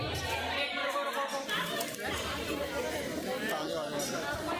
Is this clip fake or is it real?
real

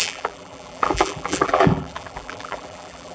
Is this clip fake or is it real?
fake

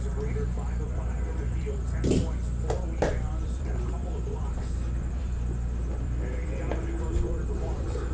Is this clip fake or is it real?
fake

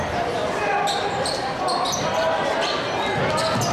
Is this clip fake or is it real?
fake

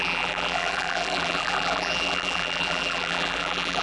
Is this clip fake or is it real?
fake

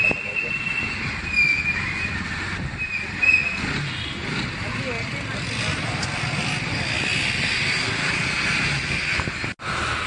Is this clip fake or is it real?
real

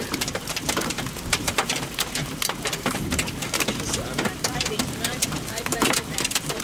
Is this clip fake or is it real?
fake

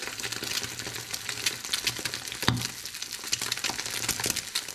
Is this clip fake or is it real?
real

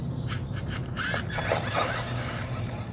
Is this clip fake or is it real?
fake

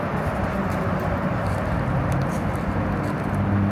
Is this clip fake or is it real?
real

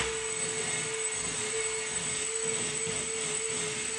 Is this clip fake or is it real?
real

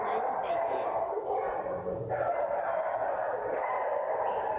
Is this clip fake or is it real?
fake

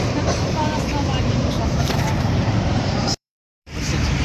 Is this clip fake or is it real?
fake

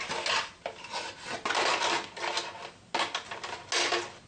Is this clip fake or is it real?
real